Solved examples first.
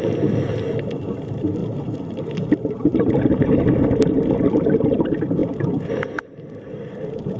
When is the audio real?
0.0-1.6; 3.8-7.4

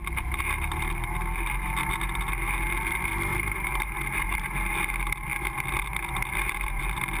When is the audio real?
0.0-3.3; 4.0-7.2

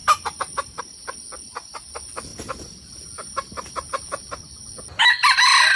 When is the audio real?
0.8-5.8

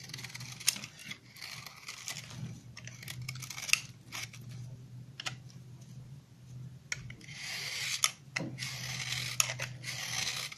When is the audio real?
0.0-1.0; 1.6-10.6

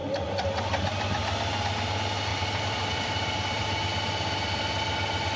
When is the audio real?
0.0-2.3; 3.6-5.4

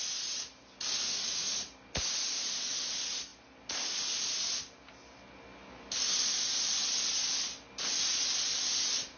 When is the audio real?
0.0-9.2